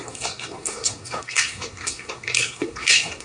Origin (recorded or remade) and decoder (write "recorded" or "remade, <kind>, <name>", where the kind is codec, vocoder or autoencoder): remade, codec, SNAC